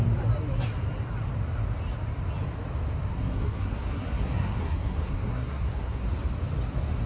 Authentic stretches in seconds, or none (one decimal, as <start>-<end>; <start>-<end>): 0.0-3.1; 6.0-7.1